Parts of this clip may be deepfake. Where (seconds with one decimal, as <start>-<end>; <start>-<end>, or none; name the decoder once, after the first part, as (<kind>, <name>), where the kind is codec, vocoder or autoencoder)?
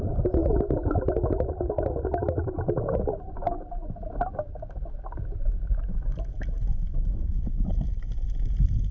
none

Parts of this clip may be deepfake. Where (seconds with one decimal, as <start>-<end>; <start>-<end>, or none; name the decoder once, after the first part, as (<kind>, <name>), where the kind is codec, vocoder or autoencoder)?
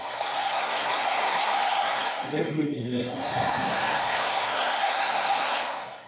0.0-6.1 (codec, SNAC)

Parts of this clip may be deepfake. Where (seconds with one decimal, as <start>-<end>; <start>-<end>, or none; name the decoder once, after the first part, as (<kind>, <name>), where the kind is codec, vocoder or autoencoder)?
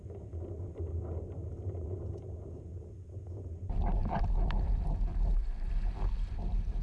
none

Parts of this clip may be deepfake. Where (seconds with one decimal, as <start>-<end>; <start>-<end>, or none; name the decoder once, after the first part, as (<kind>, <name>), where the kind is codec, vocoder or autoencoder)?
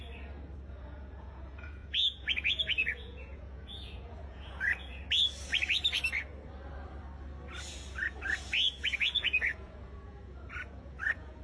0.7-5.0 (vocoder, Vocos); 7.7-11.4